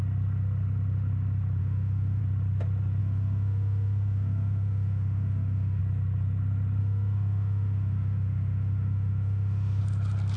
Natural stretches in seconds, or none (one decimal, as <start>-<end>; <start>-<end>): 0.0-1.6; 2.2-3.0; 5.8-6.8; 9.8-10.4